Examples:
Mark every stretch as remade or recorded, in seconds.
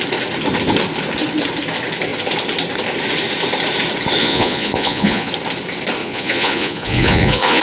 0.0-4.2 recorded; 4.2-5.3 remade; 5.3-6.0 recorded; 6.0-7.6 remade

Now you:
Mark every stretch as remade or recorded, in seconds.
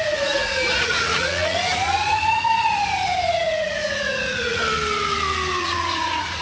0.0-4.6 remade; 4.6-5.6 recorded; 5.6-6.4 remade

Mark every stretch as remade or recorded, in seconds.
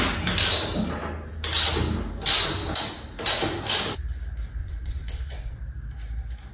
0.0-4.6 recorded; 4.6-5.6 remade; 5.6-6.5 recorded